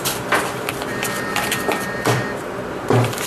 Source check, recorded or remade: remade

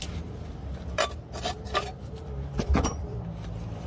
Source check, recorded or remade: remade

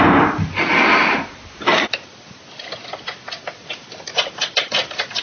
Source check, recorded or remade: recorded